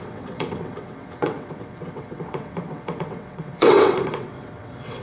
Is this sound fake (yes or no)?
yes